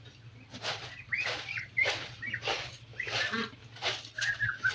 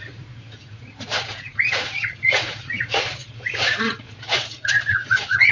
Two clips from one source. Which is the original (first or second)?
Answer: first